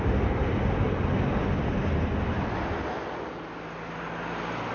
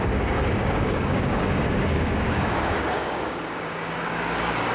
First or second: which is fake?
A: second